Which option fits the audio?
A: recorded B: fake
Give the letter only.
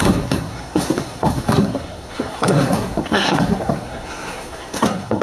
B